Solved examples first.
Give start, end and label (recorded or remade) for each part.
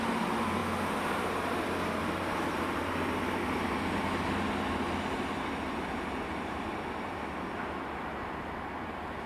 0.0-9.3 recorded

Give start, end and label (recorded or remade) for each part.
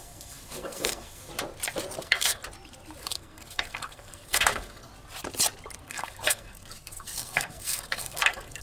0.0-1.3 remade; 1.3-2.0 recorded; 2.0-2.4 remade; 2.4-3.0 recorded; 3.0-4.9 remade; 4.9-5.8 recorded; 5.8-8.6 remade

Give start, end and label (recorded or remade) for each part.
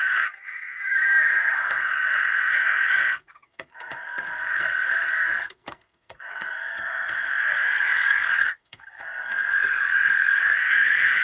0.0-11.2 remade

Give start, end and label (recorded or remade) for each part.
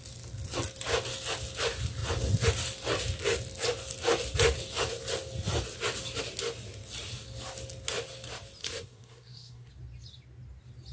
0.0-8.6 recorded; 8.6-9.7 remade; 9.7-10.9 recorded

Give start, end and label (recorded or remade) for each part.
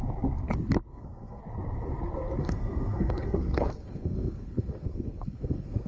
0.0-0.9 recorded; 0.9-1.4 remade; 1.4-2.4 recorded; 2.4-5.9 remade